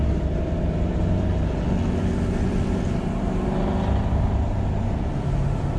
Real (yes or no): yes